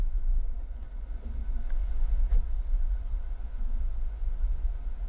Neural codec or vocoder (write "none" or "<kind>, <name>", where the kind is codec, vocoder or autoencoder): vocoder, Vocos